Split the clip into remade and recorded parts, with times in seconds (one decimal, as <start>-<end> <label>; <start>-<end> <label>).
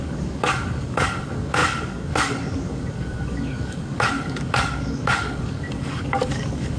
0.0-6.8 remade